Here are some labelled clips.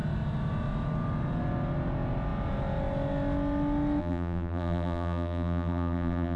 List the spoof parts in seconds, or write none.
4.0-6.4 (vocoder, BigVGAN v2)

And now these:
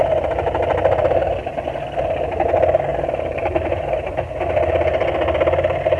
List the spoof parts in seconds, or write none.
2.9-4.1 (vocoder, BigVGAN v2)

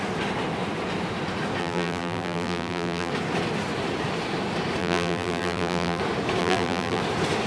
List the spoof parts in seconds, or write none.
1.6-3.1 (vocoder, BigVGAN v2); 4.8-6.0; 6.4-7.0

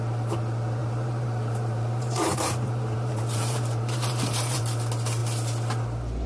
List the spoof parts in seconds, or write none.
0.8-4.6 (vocoder, BigVGAN v2)

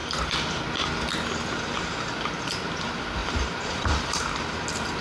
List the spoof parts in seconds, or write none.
3.2-4.4 (vocoder, BigVGAN v2)

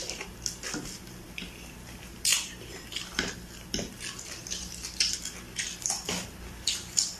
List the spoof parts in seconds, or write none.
2.3-4.2 (vocoder, BigVGAN v2)

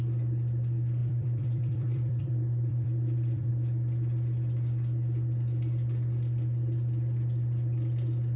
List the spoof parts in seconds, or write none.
1.0-3.5 (vocoder, BigVGAN v2)